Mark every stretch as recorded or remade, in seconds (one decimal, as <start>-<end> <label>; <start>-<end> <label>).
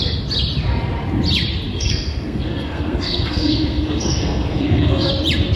0.0-1.7 recorded; 1.7-5.1 remade; 5.1-5.6 recorded